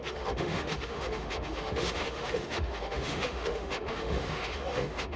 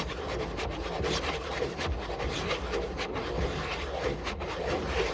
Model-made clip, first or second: first